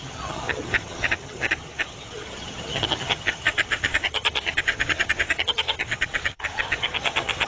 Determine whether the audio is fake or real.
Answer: fake